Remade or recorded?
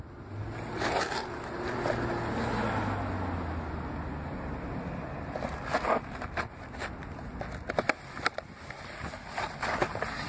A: recorded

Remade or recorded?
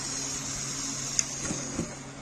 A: recorded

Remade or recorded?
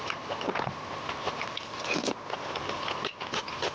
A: recorded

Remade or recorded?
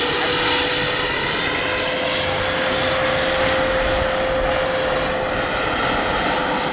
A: recorded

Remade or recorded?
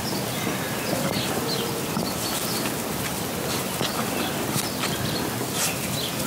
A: recorded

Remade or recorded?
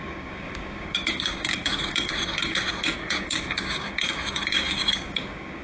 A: remade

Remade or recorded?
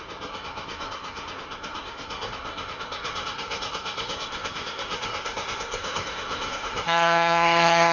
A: remade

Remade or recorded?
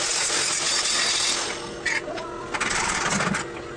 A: recorded